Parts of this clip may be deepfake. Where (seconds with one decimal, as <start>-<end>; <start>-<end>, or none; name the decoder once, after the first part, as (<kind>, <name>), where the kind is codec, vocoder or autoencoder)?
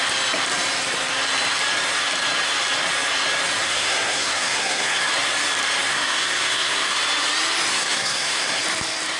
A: 3.6-5.1 (codec, SNAC); 5.9-6.9; 7.7-8.6